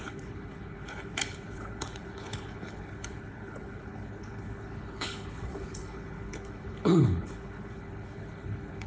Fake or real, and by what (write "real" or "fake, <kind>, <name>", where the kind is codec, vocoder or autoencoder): fake, codec, HILCodec